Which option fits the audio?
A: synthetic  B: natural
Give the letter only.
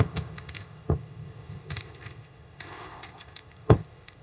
A